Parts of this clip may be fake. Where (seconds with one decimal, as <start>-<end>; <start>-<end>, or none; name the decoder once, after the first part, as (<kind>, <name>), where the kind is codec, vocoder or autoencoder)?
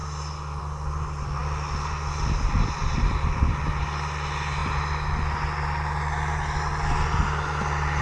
none